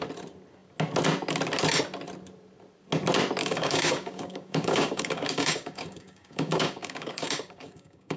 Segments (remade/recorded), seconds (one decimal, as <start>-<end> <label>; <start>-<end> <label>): 0.0-3.4 recorded; 3.4-8.2 remade